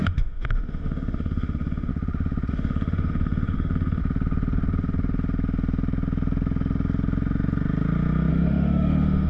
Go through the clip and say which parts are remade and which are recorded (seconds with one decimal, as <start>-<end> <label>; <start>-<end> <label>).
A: 0.0-1.9 remade; 1.9-2.5 recorded; 2.5-4.0 remade; 4.0-8.3 recorded; 8.3-9.3 remade